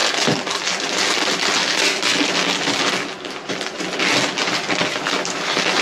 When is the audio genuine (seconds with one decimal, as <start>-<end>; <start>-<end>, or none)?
0.0-5.8